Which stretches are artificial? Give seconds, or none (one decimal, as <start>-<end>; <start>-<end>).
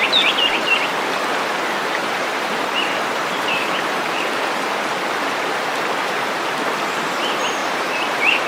2.0-4.9; 7.6-8.5